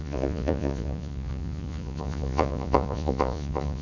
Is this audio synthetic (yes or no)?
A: yes